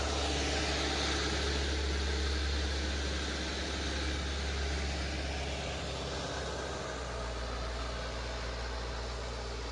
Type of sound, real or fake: real